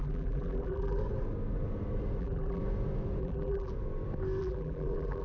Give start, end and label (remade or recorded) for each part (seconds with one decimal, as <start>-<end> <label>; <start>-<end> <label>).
0.0-1.0 remade; 1.0-2.2 recorded; 2.2-2.6 remade; 2.6-3.2 recorded; 3.2-3.7 remade; 3.7-4.4 recorded; 4.4-5.2 remade